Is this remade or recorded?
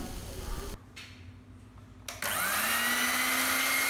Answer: recorded